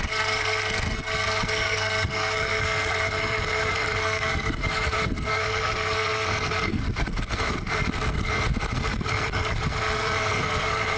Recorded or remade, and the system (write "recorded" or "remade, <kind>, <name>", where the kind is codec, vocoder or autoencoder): remade, codec, SNAC